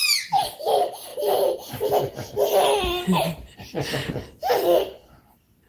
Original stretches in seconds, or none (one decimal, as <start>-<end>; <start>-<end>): 0.0-5.7